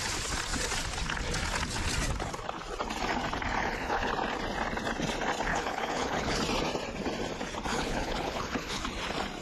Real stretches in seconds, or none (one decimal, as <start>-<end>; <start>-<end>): 0.0-3.6; 4.1-5.5; 6.4-7.7; 8.8-9.4